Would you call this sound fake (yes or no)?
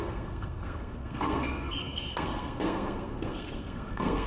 yes